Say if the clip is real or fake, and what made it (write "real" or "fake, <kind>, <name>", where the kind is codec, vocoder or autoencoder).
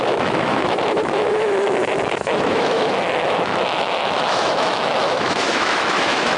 fake, autoencoder, DAC-VAE